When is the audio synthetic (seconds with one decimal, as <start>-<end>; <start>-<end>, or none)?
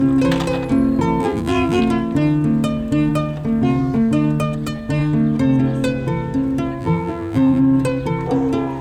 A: 1.2-1.8; 6.8-7.6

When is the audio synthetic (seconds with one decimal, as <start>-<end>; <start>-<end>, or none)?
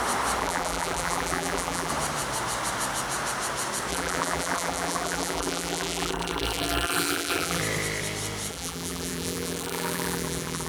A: 0.4-1.9; 3.9-7.6; 8.5-10.7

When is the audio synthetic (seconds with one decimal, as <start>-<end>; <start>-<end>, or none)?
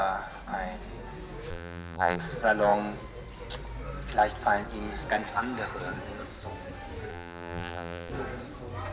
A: 1.5-2.2; 7.1-8.1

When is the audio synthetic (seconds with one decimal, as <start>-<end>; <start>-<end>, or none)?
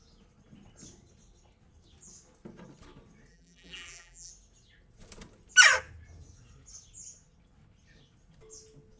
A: 3.3-4.3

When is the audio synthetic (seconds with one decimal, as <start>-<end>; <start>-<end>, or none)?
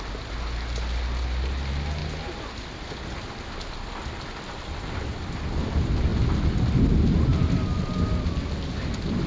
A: 2.0-4.2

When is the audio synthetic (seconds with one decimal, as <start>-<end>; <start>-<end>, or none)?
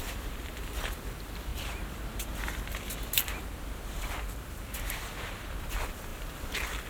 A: 0.0-1.5; 5.6-6.9